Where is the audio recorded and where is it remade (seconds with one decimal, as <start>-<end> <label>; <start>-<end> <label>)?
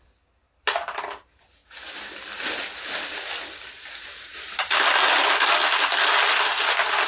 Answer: 0.0-7.1 recorded